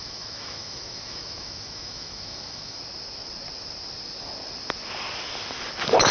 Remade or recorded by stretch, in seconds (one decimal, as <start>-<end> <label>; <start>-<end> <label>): 0.0-2.8 remade; 2.8-6.1 recorded